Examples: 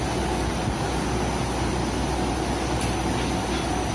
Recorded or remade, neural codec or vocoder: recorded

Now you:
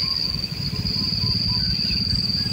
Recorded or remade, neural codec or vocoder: recorded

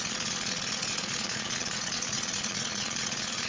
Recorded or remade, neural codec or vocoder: remade, vocoder, Vocos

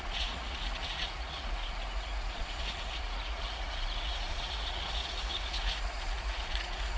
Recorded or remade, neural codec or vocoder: remade, vocoder, Vocos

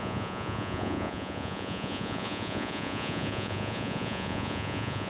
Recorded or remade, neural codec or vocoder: remade, vocoder, Vocos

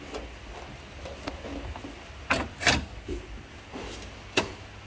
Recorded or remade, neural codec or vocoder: recorded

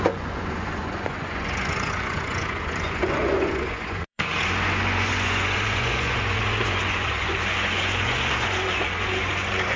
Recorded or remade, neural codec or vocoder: remade, vocoder, Vocos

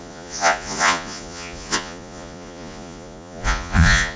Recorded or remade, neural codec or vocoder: remade, vocoder, Vocos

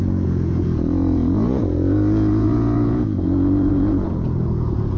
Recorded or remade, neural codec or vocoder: remade, vocoder, Vocos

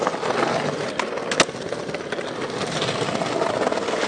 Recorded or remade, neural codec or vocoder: recorded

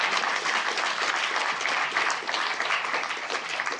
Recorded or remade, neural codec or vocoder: recorded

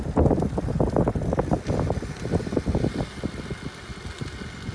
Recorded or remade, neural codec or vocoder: recorded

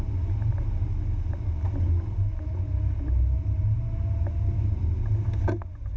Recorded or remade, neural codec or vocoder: recorded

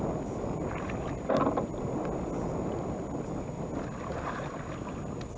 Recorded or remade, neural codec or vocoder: recorded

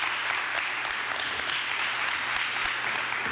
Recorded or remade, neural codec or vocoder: recorded